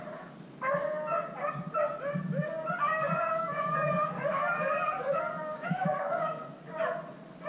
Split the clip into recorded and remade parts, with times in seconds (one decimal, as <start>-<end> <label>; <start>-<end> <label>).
0.0-2.9 recorded; 2.9-6.5 remade; 6.5-7.5 recorded

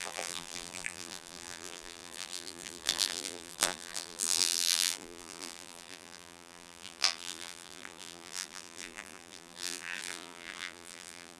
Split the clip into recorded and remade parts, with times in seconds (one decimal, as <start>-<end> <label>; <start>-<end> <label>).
0.0-11.4 remade

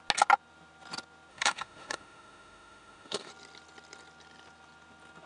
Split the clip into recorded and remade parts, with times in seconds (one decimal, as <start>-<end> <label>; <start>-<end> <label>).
0.0-1.3 recorded; 1.3-3.3 remade; 3.3-5.3 recorded

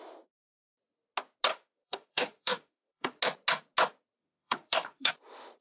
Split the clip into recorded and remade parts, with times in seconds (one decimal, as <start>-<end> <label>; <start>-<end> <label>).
0.0-1.5 recorded; 1.5-3.2 remade; 3.2-4.2 recorded; 4.2-5.1 remade; 5.1-5.6 recorded

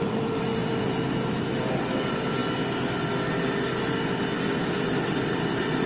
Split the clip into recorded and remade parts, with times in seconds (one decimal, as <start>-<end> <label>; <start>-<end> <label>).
0.0-2.4 remade; 2.4-4.5 recorded; 4.5-5.9 remade

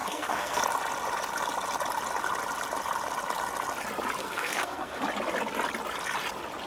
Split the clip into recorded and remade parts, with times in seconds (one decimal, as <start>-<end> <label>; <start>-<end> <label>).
0.0-0.6 remade; 0.6-4.2 recorded; 4.2-5.0 remade; 5.0-6.7 recorded

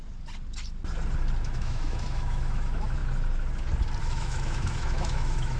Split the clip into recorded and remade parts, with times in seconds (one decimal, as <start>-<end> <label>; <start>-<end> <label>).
0.0-1.4 recorded; 1.4-3.0 remade; 3.0-4.0 recorded; 4.0-5.6 remade

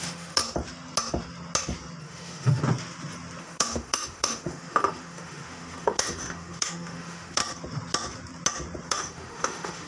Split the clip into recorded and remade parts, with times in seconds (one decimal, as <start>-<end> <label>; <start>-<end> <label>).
0.0-0.4 remade; 0.4-2.0 recorded; 2.0-2.6 remade; 2.6-3.4 recorded; 3.4-7.4 remade; 7.4-8.9 recorded; 8.9-9.9 remade